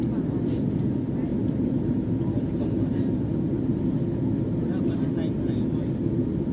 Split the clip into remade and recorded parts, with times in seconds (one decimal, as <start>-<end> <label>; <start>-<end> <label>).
0.0-1.3 recorded; 1.3-3.1 remade; 3.1-6.5 recorded